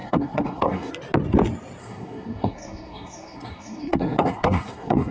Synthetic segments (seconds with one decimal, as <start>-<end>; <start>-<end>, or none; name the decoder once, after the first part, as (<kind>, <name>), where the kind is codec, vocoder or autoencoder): 0.0-0.9 (codec, SNAC); 1.8-5.1